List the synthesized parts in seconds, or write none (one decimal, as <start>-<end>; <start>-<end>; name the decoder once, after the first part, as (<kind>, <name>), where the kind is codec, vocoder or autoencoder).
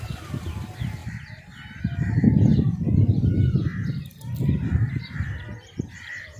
2.5-4.9 (vocoder, BigVGAN v2)